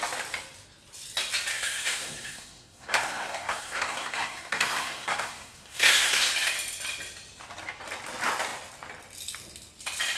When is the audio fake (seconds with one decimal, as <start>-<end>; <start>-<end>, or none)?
1.5-6.3